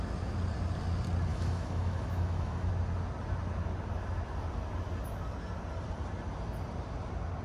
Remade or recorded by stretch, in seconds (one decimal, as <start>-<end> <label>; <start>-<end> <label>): 0.0-1.3 recorded; 1.3-2.7 remade; 2.7-7.4 recorded